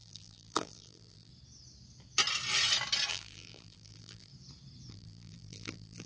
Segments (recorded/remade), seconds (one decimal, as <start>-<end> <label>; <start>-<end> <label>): 0.0-1.3 remade; 1.3-3.1 recorded; 3.1-4.3 remade; 4.3-4.9 recorded; 4.9-6.1 remade